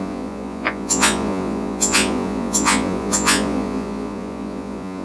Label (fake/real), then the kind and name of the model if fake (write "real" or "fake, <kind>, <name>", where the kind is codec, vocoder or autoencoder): fake, vocoder, Vocos